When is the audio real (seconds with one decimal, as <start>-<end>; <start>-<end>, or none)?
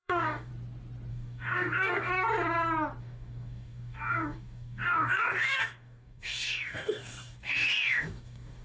0.5-1.1; 2.1-3.0